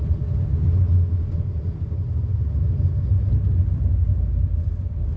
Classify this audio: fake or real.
real